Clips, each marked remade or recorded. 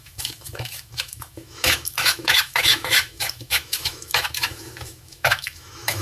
remade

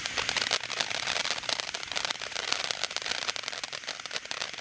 recorded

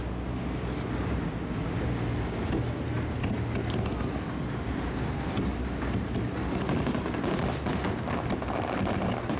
recorded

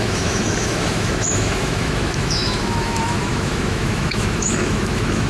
remade